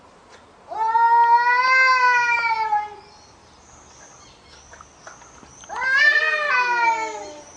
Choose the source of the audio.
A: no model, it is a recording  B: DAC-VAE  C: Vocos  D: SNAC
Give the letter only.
A